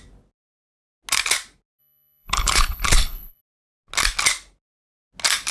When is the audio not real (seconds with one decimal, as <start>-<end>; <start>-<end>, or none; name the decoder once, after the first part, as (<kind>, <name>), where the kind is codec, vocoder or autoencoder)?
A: 1.8-3.4 (codec, HILCodec)